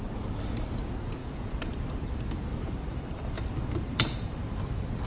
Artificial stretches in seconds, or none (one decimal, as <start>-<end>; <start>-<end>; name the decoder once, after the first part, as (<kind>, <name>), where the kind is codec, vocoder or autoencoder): 1.2-2.1 (vocoder, BigVGAN v2); 2.5-4.6

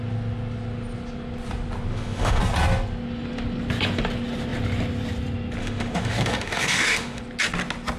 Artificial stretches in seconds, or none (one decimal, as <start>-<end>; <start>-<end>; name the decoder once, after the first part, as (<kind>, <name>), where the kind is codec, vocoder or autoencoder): 1.9-2.4 (autoencoder, DAC-VAE); 5.6-7.2